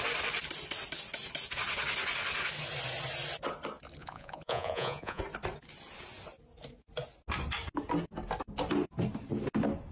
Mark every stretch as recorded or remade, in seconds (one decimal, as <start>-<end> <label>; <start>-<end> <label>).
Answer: 0.0-4.0 recorded; 4.0-5.2 remade; 5.2-9.9 recorded